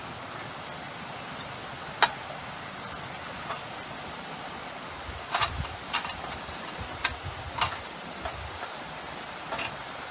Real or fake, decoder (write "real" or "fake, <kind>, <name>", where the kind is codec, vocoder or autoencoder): real